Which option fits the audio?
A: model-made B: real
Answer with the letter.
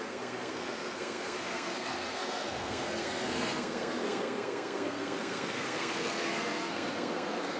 A